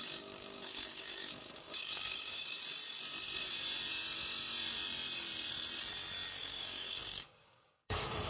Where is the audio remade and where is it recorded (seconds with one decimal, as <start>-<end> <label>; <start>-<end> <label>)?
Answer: 0.0-2.6 remade; 2.6-6.4 recorded; 6.4-8.3 remade